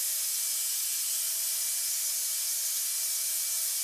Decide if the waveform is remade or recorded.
recorded